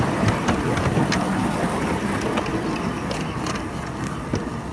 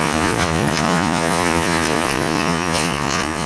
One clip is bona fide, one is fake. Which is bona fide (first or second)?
first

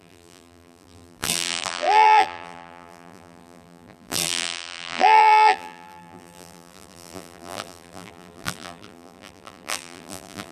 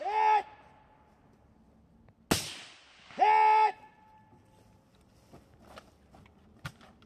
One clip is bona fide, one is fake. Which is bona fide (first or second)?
second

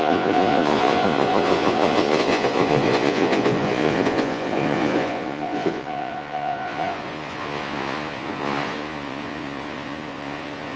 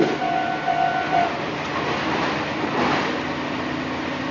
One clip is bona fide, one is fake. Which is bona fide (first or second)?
second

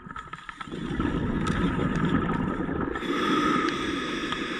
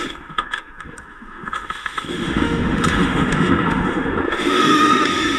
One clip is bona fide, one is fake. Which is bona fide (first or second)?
first